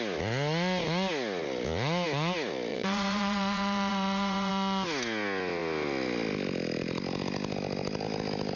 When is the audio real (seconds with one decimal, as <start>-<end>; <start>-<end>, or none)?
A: 0.0-2.7; 4.5-8.6